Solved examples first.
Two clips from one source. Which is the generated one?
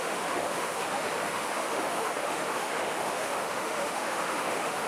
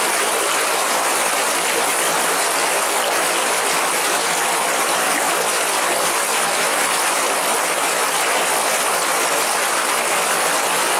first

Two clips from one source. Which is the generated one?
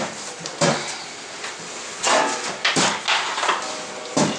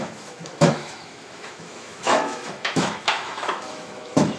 second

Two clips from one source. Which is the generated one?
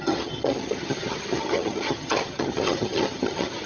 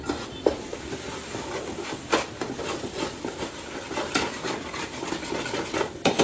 first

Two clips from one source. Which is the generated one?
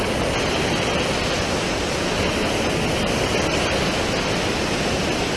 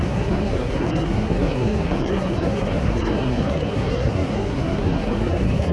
second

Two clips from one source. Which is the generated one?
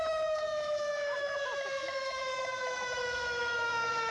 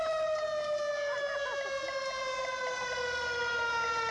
first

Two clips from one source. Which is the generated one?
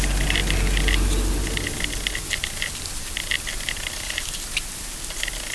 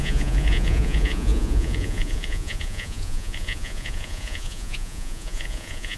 second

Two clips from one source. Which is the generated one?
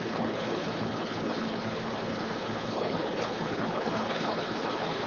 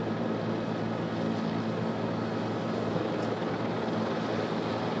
first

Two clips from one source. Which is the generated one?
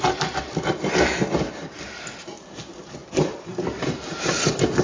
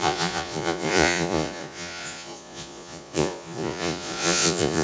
second